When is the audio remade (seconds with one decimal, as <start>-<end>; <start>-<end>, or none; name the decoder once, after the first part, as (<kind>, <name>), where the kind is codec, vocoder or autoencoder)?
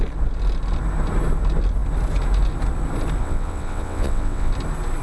3.2-4.5 (vocoder, WaveNeXt)